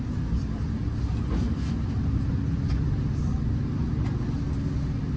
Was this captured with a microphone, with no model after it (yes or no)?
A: yes